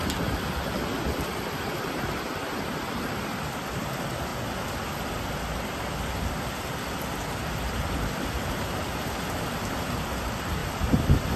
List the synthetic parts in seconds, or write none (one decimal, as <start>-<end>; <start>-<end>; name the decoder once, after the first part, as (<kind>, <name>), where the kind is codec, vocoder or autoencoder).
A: none